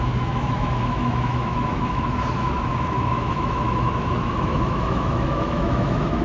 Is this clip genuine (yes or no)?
no